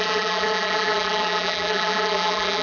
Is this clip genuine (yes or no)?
no